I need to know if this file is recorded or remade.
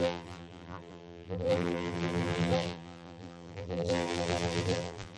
remade